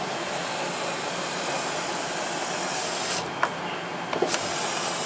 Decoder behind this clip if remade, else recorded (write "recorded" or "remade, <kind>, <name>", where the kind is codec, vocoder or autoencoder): recorded